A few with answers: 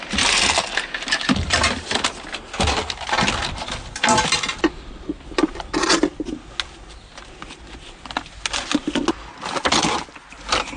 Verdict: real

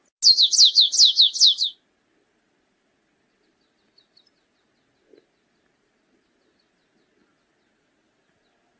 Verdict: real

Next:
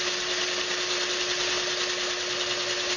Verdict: real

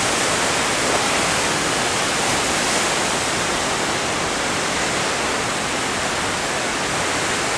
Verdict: real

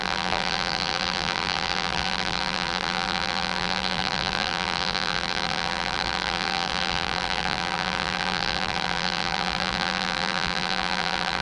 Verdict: fake